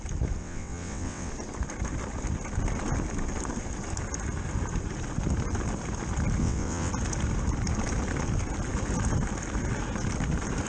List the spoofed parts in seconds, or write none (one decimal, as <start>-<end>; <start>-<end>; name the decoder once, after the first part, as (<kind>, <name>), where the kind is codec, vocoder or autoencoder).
0.4-1.3 (vocoder, WaveNeXt); 6.4-6.9